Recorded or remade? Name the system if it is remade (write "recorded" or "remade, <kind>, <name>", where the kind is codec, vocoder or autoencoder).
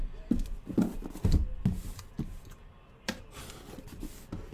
recorded